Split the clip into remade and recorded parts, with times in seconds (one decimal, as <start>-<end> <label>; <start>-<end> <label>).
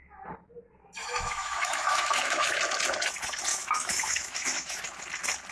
0.0-1.0 recorded; 1.0-2.6 remade; 2.6-3.5 recorded; 3.5-4.8 remade; 4.8-5.5 recorded